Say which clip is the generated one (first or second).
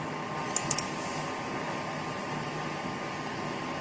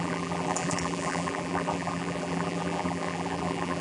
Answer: second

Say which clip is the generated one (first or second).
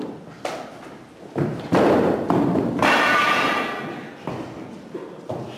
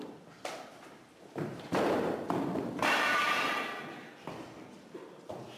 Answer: second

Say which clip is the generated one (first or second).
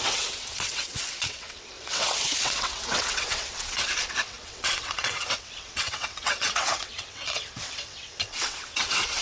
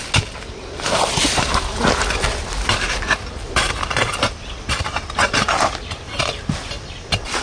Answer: first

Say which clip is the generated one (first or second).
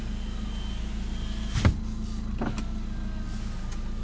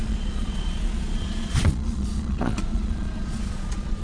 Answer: second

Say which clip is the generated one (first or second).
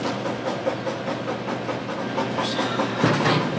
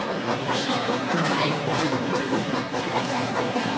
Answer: second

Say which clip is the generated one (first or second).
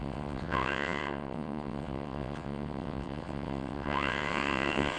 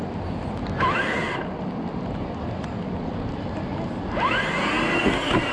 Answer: first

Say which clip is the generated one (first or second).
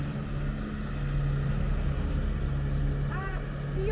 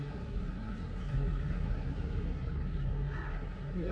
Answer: second